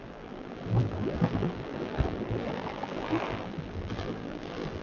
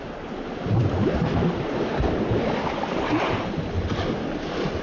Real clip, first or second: second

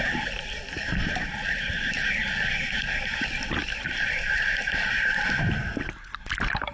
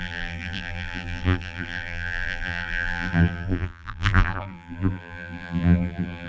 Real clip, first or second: first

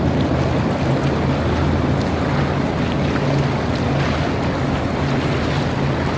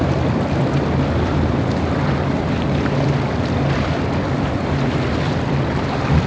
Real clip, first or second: first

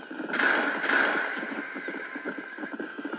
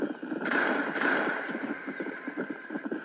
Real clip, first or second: first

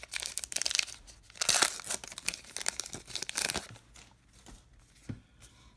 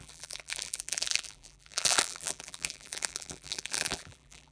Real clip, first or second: first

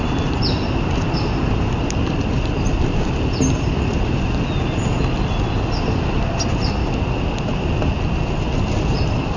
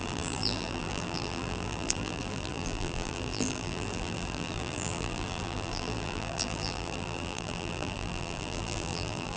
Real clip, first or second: first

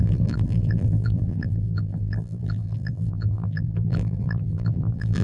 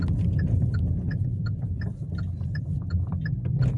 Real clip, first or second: second